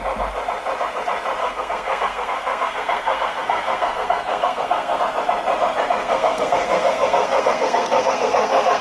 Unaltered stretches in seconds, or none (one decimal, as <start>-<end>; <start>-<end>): 0.0-1.4; 5.0-6.0